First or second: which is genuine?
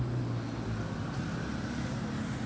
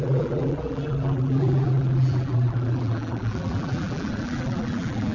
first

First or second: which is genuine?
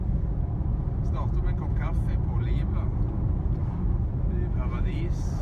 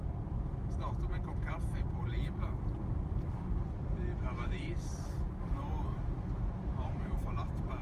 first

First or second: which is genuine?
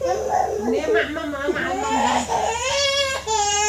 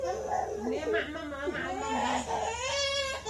second